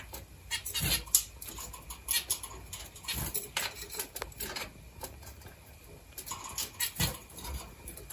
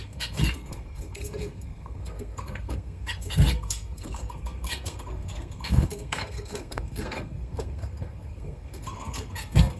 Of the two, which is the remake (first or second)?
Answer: second